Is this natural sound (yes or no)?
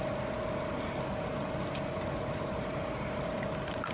yes